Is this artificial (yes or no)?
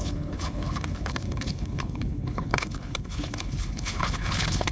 yes